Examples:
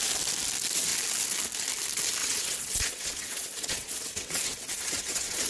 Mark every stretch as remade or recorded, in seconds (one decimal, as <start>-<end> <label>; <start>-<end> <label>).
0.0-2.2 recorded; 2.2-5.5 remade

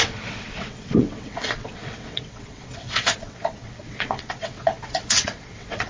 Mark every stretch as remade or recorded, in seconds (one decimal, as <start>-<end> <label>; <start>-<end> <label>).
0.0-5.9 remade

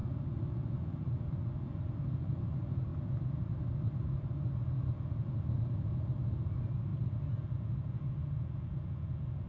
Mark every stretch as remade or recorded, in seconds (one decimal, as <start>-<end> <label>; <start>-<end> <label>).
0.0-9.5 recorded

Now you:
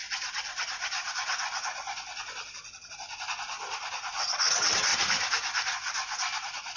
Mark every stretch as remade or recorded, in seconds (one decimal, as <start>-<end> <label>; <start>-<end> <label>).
0.0-4.1 recorded; 4.1-4.9 remade; 4.9-6.8 recorded